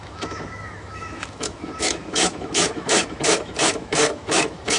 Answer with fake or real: fake